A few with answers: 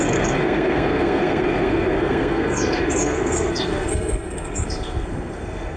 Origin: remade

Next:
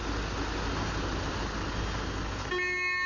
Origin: recorded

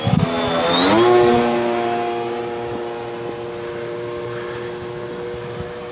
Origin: recorded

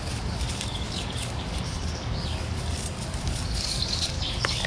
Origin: remade